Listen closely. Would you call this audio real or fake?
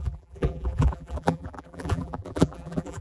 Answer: fake